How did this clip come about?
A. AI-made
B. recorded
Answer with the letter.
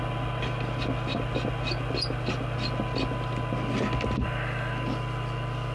B